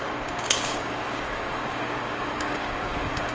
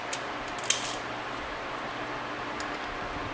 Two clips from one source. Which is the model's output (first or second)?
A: first